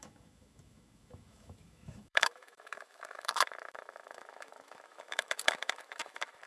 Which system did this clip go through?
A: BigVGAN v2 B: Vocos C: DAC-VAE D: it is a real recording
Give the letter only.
C